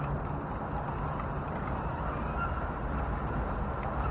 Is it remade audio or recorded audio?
recorded